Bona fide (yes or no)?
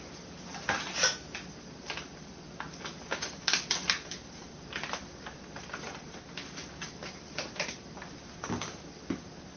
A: yes